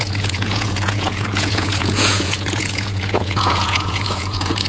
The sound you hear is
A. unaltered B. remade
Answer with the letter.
B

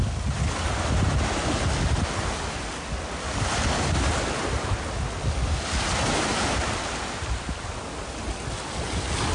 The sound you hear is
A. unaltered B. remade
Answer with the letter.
A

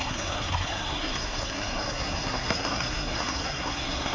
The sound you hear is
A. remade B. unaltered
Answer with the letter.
A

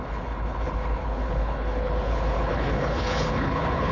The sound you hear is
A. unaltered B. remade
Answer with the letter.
B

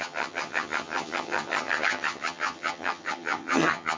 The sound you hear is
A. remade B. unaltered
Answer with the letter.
A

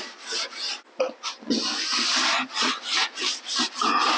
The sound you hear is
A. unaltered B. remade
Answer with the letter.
A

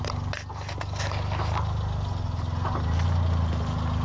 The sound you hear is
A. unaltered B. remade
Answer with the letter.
A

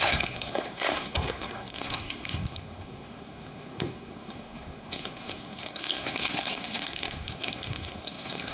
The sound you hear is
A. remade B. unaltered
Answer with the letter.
A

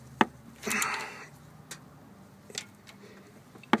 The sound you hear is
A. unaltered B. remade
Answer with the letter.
A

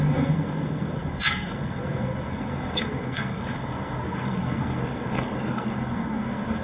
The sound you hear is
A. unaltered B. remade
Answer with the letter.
B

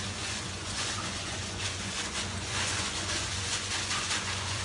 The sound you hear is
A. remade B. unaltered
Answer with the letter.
A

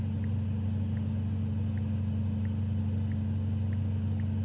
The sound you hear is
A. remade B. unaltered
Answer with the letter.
B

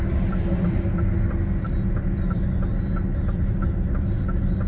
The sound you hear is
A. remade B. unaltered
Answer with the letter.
B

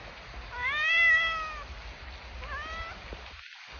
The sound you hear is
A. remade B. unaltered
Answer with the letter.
B